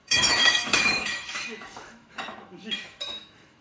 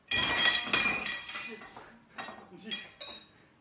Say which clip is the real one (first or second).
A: second